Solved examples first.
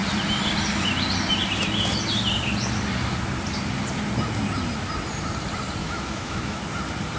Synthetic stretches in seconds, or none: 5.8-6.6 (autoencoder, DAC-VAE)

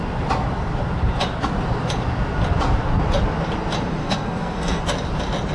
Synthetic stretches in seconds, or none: 4.0-4.8 (codec, SNAC)